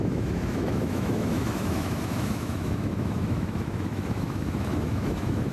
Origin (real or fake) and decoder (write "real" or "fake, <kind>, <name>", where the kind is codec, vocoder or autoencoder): fake, autoencoder, DAC-VAE